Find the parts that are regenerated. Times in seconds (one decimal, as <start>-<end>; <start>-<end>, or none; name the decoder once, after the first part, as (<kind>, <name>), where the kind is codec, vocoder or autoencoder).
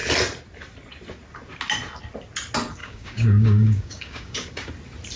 2.8-4.7 (codec, DAC)